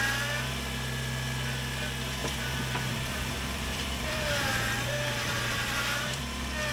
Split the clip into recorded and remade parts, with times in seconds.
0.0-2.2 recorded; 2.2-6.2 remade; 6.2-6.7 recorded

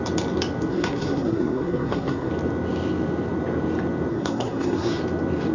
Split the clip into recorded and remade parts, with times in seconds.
0.0-0.7 recorded; 0.7-2.3 remade; 2.3-4.1 recorded; 4.1-5.0 remade; 5.0-5.5 recorded